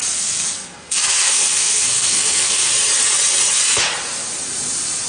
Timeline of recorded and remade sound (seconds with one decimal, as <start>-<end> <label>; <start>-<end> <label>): 0.0-2.7 remade; 2.7-5.1 recorded